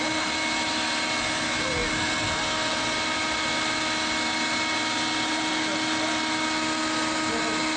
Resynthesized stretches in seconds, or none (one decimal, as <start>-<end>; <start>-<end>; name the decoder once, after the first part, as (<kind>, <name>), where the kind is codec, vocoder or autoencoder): none